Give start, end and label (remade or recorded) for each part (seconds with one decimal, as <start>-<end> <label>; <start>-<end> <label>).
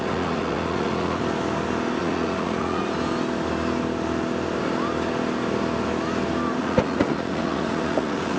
0.0-1.2 remade; 1.2-2.0 recorded; 2.0-2.8 remade; 2.8-6.6 recorded; 6.6-8.4 remade